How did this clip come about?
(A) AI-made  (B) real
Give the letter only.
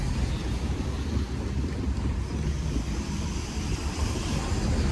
B